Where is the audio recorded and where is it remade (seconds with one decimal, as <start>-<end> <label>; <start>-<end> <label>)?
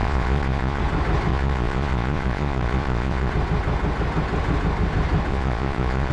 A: 0.0-0.8 remade; 0.8-1.3 recorded; 1.3-3.3 remade; 3.3-5.3 recorded; 5.3-6.1 remade